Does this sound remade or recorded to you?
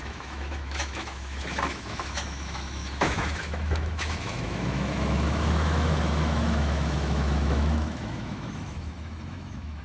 remade